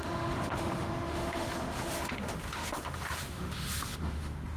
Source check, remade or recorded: remade